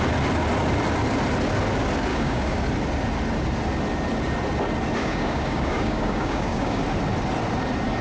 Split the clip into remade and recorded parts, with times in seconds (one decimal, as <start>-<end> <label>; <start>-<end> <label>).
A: 0.0-2.1 recorded; 2.1-2.6 remade; 2.6-5.0 recorded; 5.0-6.8 remade; 6.8-8.0 recorded